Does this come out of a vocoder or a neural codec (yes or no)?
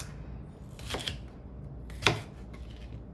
no